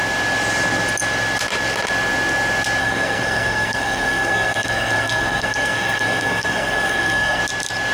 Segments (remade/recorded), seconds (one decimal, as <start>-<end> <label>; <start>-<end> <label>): 0.0-2.8 recorded; 2.8-7.4 remade; 7.4-7.9 recorded